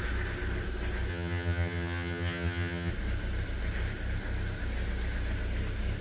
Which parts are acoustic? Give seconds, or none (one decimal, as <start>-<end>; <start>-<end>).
0.0-1.1; 2.9-6.0